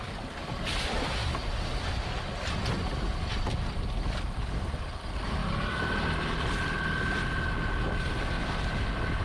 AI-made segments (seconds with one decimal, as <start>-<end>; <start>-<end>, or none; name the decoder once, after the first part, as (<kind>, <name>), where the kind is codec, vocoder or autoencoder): none